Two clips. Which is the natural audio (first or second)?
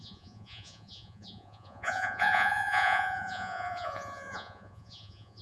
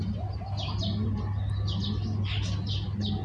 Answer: second